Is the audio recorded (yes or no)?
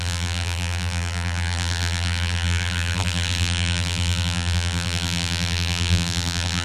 no